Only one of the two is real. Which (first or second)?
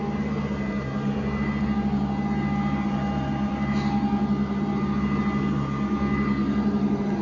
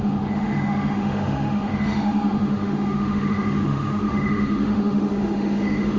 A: first